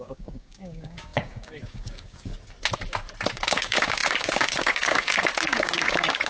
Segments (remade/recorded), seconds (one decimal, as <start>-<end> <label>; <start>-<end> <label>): 0.0-2.3 remade; 2.3-3.3 recorded; 3.3-6.3 remade